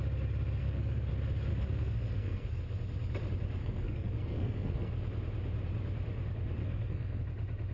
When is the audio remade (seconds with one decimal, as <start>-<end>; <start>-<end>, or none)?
0.6-1.1; 1.5-2.6; 3.6-4.9; 6.6-7.2